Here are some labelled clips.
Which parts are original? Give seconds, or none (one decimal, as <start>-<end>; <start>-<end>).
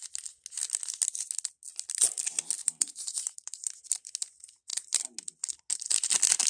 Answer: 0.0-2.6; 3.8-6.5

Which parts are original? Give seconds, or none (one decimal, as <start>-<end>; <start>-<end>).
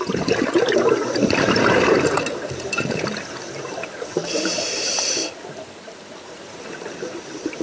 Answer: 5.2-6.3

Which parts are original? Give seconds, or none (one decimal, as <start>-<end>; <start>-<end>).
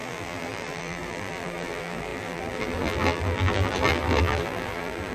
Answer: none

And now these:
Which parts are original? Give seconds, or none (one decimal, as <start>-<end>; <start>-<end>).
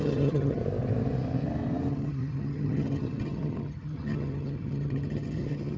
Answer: 0.6-1.9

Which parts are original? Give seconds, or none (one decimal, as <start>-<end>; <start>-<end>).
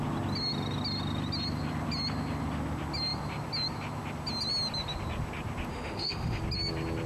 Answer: 0.0-5.7; 6.4-7.1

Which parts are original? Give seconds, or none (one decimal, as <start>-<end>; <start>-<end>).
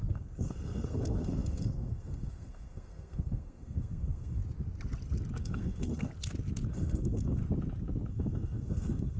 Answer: 4.4-5.4; 6.1-6.7; 7.4-8.1